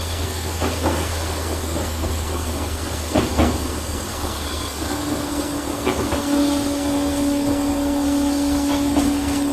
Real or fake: fake